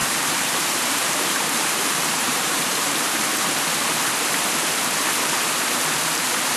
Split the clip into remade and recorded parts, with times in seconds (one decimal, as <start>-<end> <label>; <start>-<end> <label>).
0.0-3.2 remade; 3.2-6.6 recorded